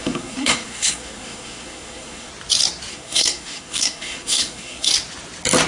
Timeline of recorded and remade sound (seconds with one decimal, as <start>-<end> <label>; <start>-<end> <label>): 0.0-2.3 remade; 2.3-2.9 recorded; 2.9-4.9 remade; 4.9-5.7 recorded